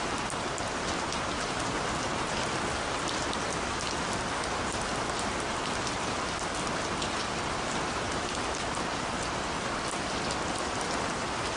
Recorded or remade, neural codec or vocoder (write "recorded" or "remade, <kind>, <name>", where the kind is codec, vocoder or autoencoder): recorded